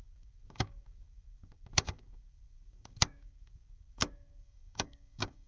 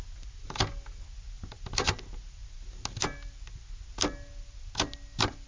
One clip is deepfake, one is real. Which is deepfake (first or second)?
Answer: first